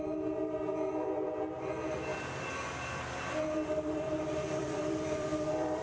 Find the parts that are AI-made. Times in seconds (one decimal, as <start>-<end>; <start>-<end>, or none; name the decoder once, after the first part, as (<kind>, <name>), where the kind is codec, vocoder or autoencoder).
2.1-5.8 (vocoder, BigVGAN v2)